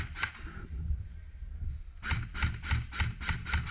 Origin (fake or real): real